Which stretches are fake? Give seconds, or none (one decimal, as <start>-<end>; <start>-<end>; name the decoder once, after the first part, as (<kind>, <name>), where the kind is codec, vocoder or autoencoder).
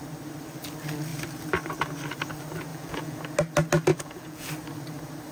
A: 2.7-3.2 (vocoder, Vocos); 3.9-4.5